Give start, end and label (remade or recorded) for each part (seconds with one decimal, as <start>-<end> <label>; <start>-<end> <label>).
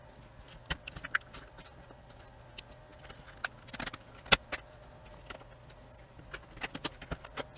0.0-7.6 recorded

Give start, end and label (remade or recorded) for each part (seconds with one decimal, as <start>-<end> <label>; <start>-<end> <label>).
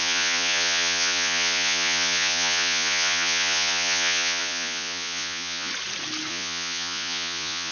0.0-5.7 remade; 5.7-6.3 recorded; 6.3-7.7 remade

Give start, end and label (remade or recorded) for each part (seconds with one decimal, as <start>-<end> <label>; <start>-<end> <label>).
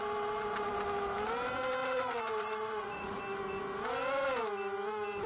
0.0-1.8 recorded; 1.8-3.2 remade; 3.2-5.3 recorded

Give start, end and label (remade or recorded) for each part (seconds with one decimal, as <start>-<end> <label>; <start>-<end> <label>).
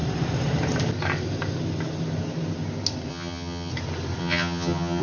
0.0-3.1 recorded; 3.1-3.7 remade; 3.7-4.2 recorded; 4.2-5.0 remade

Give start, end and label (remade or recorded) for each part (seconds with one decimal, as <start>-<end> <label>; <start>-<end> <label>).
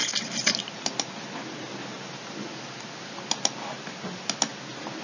0.0-5.0 recorded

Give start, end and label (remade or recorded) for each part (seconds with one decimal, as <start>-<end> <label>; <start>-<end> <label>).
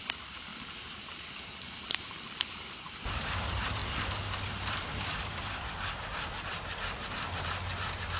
0.0-3.8 remade; 3.8-5.5 recorded; 5.5-8.2 remade